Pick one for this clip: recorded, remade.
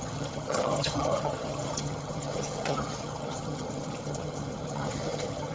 remade